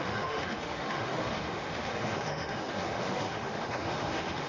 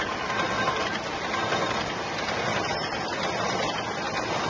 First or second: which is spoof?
first